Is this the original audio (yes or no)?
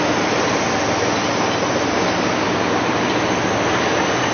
yes